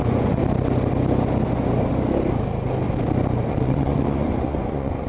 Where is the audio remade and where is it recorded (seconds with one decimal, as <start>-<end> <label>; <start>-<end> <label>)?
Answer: 0.0-0.4 remade; 0.4-3.5 recorded; 3.5-5.1 remade